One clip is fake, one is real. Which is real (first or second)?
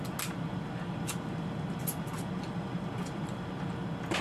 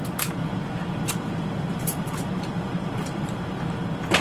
first